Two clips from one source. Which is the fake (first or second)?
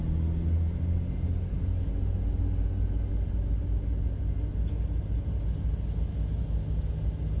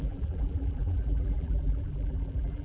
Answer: second